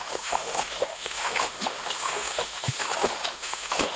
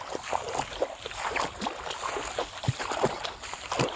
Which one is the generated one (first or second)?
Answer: first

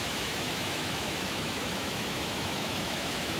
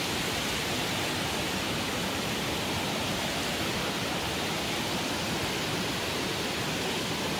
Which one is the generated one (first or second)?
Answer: first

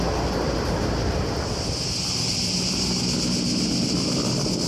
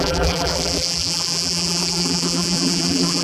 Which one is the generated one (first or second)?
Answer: second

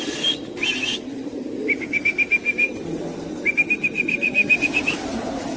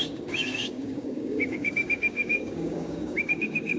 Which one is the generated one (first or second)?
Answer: second